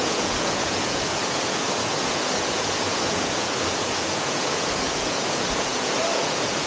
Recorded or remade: remade